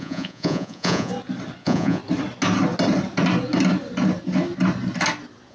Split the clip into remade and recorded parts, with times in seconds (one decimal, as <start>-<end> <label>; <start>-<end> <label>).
0.0-1.1 remade; 1.1-1.6 recorded; 1.6-2.0 remade; 2.0-5.5 recorded